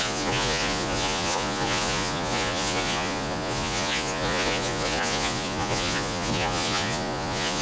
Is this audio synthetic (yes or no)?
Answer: yes